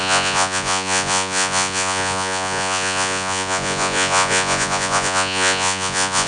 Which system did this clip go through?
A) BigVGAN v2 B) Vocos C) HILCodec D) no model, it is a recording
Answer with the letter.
B